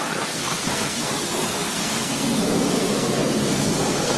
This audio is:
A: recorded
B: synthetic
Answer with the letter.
B